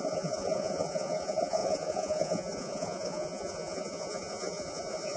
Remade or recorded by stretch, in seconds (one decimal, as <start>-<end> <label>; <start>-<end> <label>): 0.0-5.2 remade